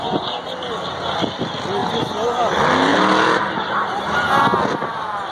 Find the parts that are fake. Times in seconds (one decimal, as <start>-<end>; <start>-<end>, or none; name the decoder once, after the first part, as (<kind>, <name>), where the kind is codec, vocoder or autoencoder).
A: none